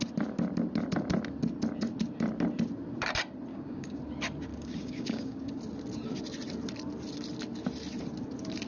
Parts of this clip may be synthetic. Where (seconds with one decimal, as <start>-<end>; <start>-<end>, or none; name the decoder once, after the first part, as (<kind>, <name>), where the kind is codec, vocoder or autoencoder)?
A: 3.5-4.0 (codec, DAC); 4.5-5.5